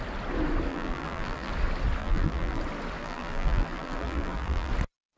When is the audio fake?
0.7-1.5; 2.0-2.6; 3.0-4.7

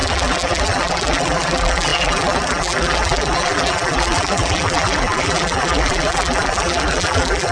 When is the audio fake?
0.0-7.5

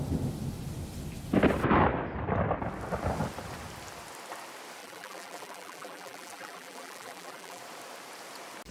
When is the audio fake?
4.8-7.6

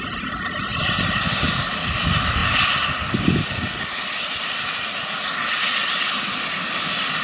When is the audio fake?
0.7-1.7

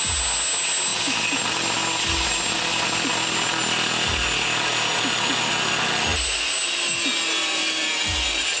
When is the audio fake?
none

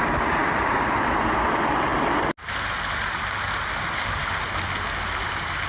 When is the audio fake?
0.4-1.1